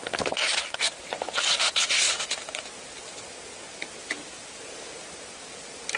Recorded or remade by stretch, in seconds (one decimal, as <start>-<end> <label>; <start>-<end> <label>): 0.0-4.0 recorded; 4.0-4.8 remade; 4.8-6.0 recorded

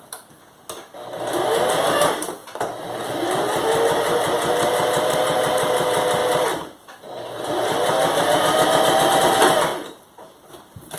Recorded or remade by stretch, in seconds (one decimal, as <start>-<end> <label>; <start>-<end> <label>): 0.0-2.4 recorded; 2.4-3.8 remade; 3.8-6.2 recorded; 6.2-9.2 remade; 9.2-9.7 recorded; 9.7-10.5 remade; 10.5-11.0 recorded

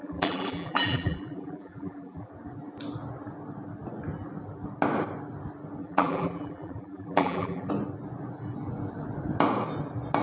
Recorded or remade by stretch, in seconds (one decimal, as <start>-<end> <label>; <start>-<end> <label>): 0.0-2.3 remade; 2.3-5.8 recorded; 5.8-7.7 remade; 7.7-10.2 recorded

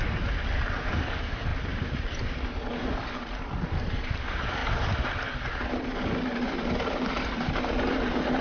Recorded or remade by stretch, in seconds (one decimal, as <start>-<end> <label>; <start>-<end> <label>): 0.0-2.7 remade; 2.7-3.3 recorded; 3.3-4.6 remade; 4.6-5.7 recorded; 5.7-8.4 remade

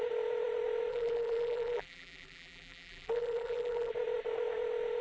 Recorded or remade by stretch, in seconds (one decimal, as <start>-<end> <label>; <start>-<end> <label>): 0.0-0.9 recorded; 0.9-3.9 remade; 3.9-5.0 recorded

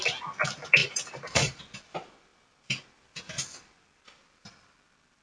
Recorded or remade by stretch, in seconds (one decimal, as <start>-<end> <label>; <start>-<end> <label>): 0.0-0.8 recorded; 0.8-1.6 remade; 1.6-5.2 recorded